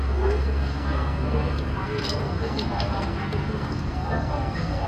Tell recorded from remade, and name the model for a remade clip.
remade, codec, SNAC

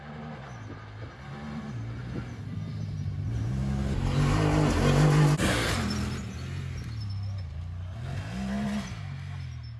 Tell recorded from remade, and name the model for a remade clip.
recorded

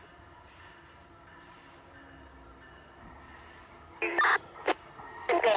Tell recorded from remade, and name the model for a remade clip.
recorded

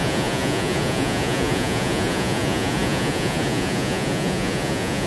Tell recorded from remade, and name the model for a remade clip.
remade, vocoder, Vocos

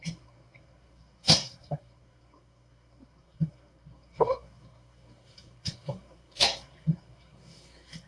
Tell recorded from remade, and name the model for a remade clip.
remade, codec, SNAC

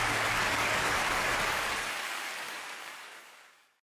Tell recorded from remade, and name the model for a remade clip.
remade, codec, DAC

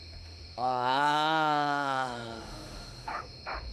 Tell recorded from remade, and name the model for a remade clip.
remade, autoencoder, DAC-VAE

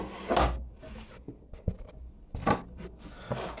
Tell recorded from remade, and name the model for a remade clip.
recorded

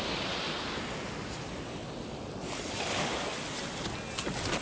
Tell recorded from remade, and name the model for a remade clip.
recorded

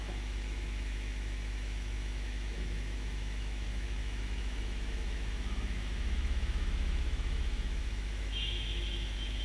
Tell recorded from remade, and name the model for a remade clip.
remade, autoencoder, DAC-VAE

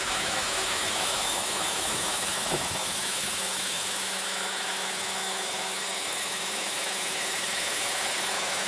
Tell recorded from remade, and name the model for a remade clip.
remade, autoencoder, DAC-VAE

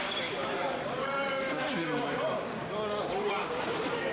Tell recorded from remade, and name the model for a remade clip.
remade, codec, DAC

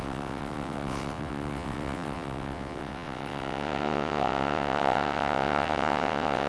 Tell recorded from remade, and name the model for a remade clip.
remade, vocoder, WaveNeXt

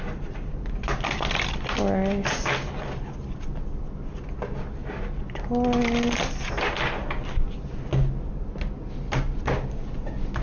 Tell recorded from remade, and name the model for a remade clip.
recorded